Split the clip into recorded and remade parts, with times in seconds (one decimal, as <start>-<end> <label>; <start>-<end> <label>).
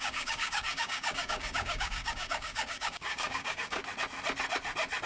0.0-3.8 remade; 3.8-5.1 recorded